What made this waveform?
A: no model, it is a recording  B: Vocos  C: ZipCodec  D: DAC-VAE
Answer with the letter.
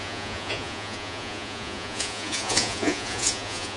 B